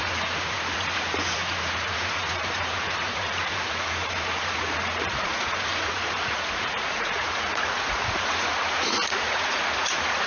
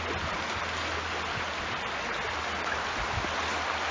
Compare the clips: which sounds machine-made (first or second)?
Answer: first